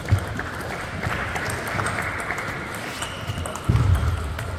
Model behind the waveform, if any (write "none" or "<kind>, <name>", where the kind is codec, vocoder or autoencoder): none